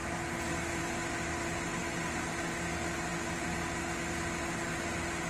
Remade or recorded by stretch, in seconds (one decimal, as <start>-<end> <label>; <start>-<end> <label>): 0.0-0.8 remade; 0.8-5.3 recorded